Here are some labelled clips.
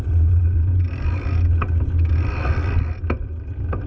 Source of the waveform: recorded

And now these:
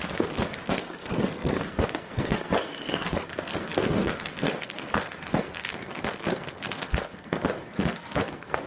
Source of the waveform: remade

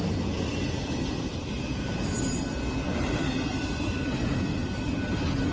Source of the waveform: recorded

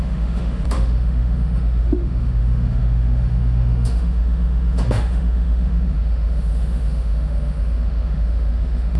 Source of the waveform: remade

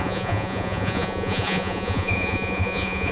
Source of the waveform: remade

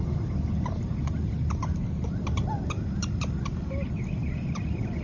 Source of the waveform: remade